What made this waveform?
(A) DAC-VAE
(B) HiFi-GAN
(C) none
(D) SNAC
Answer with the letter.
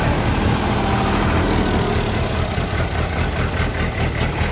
C